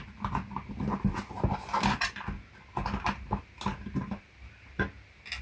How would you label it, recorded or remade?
recorded